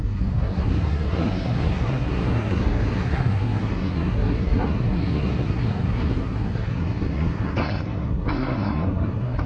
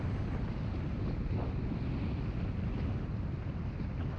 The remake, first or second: first